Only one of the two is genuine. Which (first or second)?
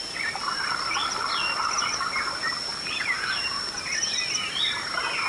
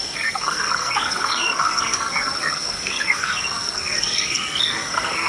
first